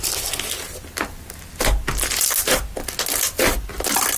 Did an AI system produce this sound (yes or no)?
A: no